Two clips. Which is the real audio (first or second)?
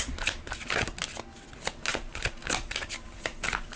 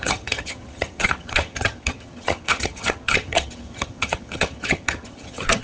first